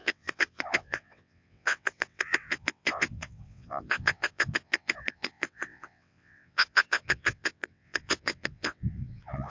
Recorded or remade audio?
remade